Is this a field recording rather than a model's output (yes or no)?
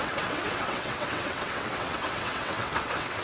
no